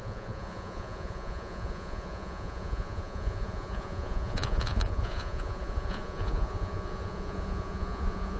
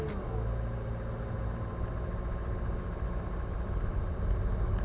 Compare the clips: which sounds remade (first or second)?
first